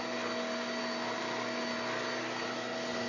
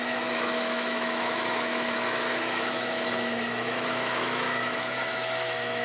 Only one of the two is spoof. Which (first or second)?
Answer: second